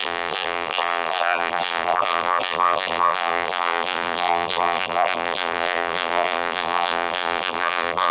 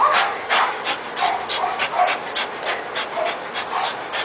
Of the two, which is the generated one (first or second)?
first